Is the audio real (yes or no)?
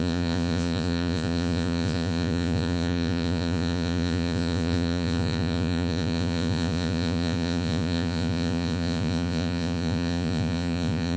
no